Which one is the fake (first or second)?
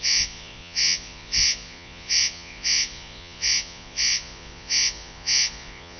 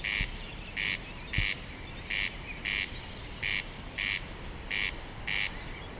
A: first